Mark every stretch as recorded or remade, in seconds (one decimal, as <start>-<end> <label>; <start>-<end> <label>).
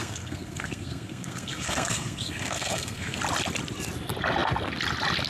0.0-3.2 remade; 3.2-5.3 recorded